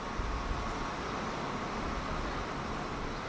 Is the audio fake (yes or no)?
no